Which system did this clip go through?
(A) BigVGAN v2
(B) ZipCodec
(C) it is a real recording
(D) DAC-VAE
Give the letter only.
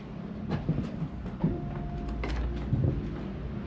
C